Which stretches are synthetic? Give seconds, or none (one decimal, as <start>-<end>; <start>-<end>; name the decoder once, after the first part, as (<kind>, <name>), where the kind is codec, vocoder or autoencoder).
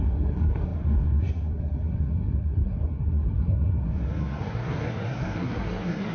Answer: 0.0-6.1 (codec, SNAC)